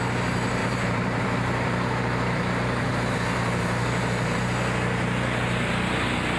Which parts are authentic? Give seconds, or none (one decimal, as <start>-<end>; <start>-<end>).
0.0-0.6; 4.4-6.4